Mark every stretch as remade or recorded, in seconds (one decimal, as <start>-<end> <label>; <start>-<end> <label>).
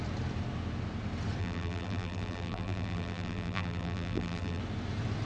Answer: 0.0-1.4 recorded; 1.4-4.6 remade; 4.6-5.3 recorded